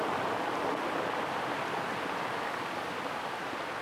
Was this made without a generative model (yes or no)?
yes